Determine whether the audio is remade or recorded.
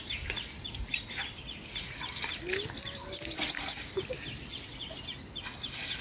recorded